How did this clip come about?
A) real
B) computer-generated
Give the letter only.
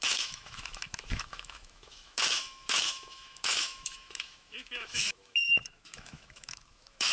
B